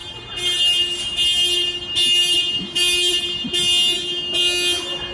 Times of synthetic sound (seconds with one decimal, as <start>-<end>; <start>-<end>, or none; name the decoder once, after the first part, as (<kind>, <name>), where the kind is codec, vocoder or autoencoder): none